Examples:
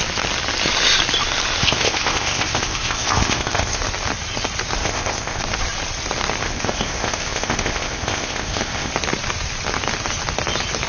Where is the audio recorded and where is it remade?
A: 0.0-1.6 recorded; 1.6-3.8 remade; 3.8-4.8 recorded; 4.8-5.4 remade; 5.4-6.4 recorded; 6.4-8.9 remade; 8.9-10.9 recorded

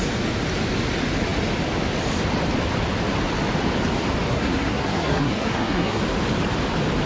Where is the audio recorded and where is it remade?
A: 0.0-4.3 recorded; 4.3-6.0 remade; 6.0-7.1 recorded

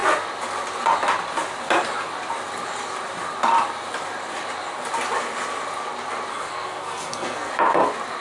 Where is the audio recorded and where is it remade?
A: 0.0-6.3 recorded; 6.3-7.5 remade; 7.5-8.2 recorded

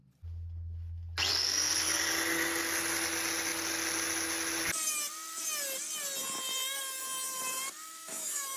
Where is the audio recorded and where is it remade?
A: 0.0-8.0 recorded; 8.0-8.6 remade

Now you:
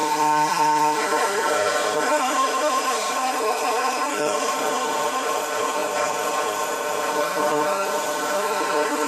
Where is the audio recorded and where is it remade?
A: 0.0-9.1 remade

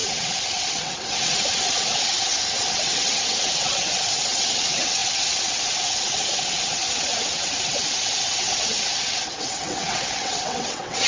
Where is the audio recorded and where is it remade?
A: 0.0-11.1 remade

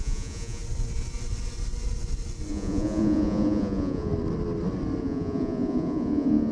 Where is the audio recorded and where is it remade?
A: 0.0-0.6 remade; 0.6-2.5 recorded; 2.5-4.1 remade; 4.1-5.0 recorded; 5.0-6.5 remade